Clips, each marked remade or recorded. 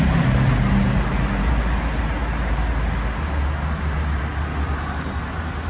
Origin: recorded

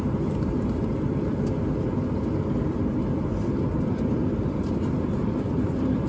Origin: recorded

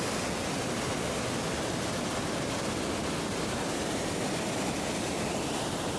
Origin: recorded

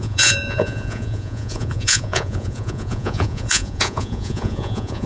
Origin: remade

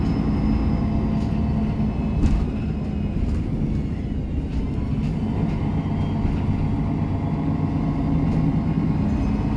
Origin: recorded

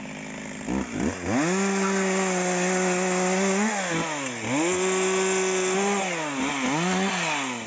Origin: recorded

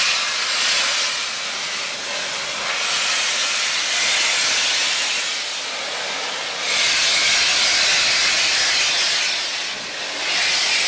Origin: recorded